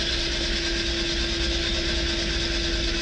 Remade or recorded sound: recorded